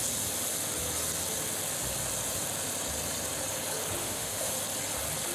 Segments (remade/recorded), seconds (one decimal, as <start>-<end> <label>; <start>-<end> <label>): 0.0-4.0 recorded; 4.0-4.5 remade; 4.5-5.3 recorded